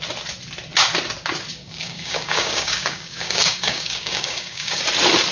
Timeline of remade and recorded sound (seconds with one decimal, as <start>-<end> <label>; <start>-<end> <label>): 0.0-1.6 recorded; 1.6-4.8 remade; 4.8-5.3 recorded